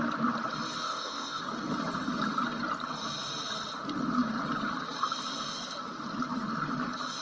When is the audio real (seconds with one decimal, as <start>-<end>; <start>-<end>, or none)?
0.0-0.8; 1.4-7.2